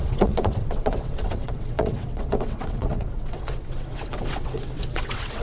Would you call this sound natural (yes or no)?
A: no